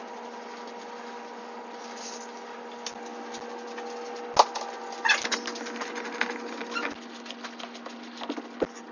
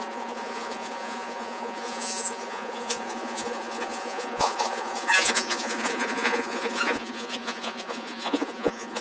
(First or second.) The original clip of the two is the first